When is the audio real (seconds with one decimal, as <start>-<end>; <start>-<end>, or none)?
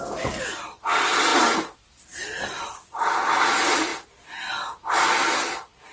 0.0-5.9